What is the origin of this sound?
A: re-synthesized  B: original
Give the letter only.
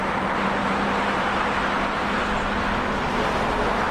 B